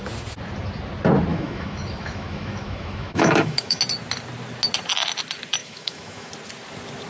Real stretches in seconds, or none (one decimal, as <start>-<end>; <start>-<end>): 0.0-1.3; 3.8-5.6; 6.3-7.1